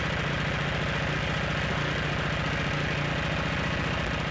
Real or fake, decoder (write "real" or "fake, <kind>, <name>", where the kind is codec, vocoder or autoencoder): real